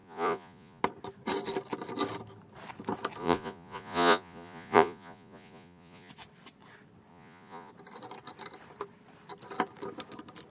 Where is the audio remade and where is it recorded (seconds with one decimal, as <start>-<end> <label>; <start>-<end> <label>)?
0.0-0.8 remade; 0.8-3.2 recorded; 3.2-6.1 remade; 6.1-7.1 recorded; 7.1-7.7 remade; 7.7-10.5 recorded